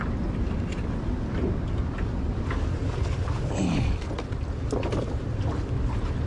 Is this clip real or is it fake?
real